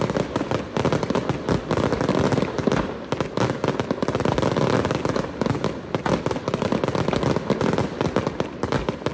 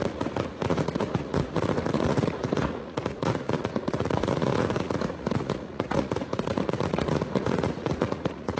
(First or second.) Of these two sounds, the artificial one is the second